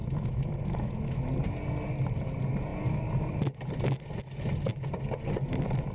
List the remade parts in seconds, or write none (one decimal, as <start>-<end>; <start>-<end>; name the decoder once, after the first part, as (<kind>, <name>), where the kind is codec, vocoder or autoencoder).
0.0-1.2 (autoencoder, DAC-VAE)